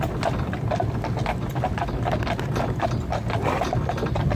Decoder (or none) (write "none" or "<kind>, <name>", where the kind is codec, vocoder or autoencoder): none